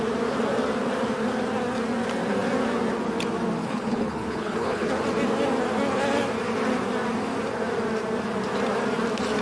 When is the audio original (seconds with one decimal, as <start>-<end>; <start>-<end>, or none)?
0.0-3.6; 4.9-9.4